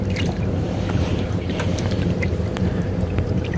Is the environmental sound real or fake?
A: fake